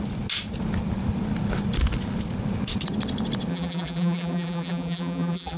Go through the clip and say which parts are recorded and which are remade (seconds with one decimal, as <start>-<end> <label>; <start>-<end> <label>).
0.0-3.5 recorded; 3.5-5.6 remade